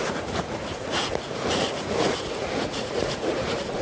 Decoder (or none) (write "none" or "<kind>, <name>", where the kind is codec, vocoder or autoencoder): vocoder, Vocos